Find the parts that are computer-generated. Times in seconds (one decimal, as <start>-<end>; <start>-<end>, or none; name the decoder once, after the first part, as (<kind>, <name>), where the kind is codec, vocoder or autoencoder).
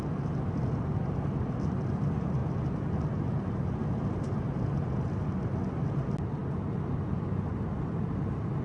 none